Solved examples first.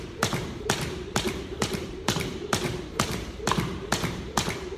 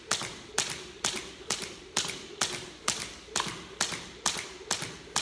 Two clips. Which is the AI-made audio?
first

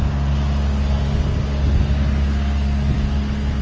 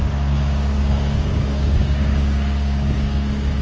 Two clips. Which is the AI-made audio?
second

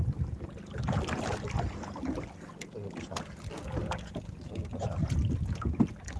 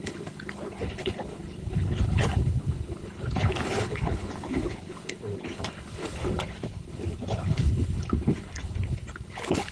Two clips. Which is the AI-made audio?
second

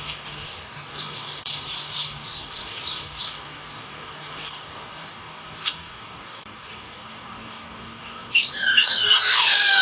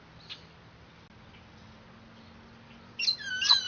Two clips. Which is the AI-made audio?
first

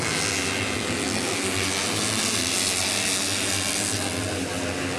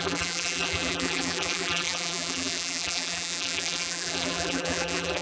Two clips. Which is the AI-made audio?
second